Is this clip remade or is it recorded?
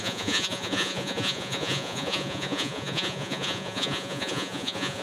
remade